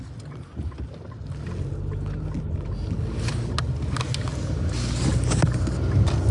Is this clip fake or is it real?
real